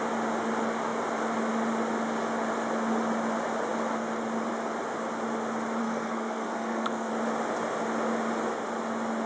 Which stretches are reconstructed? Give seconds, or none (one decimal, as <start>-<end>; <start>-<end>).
5.8-7.1